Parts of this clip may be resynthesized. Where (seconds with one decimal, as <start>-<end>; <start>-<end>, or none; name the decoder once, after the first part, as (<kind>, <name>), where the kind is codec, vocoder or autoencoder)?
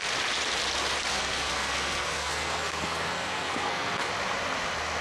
1.1-4.1 (codec, SNAC)